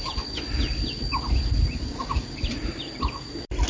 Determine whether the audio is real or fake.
real